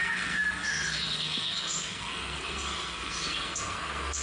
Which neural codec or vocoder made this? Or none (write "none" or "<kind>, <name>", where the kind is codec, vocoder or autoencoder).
codec, SNAC